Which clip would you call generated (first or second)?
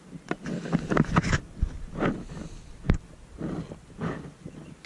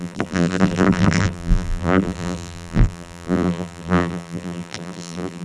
second